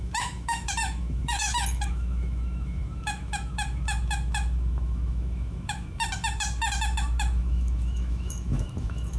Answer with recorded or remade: remade